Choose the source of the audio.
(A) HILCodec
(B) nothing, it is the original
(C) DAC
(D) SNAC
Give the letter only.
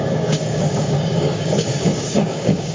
C